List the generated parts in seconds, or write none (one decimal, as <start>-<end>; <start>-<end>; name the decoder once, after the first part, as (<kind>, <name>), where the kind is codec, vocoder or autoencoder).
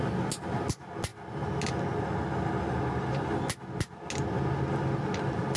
none